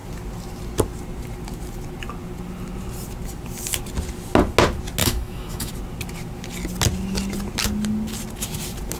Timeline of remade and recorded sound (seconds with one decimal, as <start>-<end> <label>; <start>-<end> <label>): 0.0-5.0 recorded; 5.0-5.7 remade; 5.7-9.0 recorded

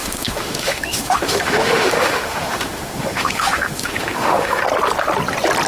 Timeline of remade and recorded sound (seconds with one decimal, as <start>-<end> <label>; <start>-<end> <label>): 0.0-4.6 remade; 4.6-5.7 recorded

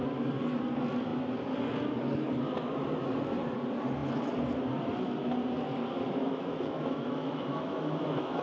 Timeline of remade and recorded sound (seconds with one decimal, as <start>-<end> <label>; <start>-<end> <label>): 0.0-6.2 recorded; 6.2-8.4 remade

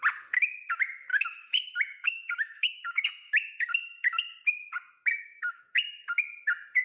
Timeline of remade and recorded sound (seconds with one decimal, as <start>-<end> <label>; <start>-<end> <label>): 0.0-1.1 recorded; 1.1-4.3 remade; 4.3-5.2 recorded; 5.2-6.2 remade; 6.2-6.8 recorded